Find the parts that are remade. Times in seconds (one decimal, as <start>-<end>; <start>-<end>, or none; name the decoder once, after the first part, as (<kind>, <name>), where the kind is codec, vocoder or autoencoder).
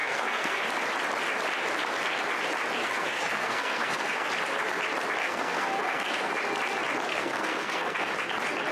0.0-0.6 (codec, SNAC); 2.8-4.3; 5.2-6.3; 7.1-8.1